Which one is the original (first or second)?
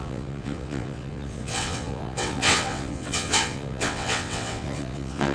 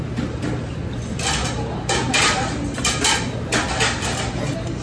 second